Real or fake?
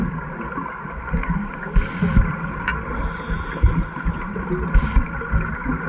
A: real